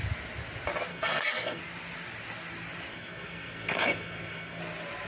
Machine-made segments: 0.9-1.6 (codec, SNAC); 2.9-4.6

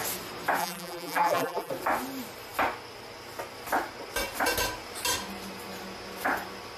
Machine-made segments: 0.6-1.7 (vocoder, BigVGAN v2)

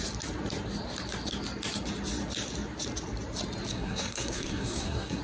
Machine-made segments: 3.7-5.2 (codec, SNAC)

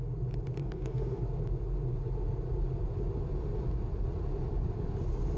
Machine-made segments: 0.6-1.2 (codec, DAC)